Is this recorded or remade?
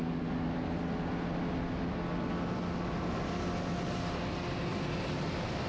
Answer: recorded